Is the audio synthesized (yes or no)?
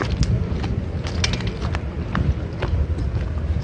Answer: no